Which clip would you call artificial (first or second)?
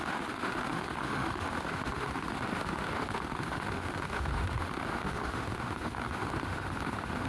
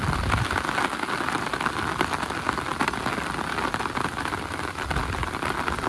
first